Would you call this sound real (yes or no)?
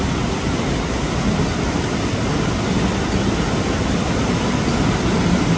yes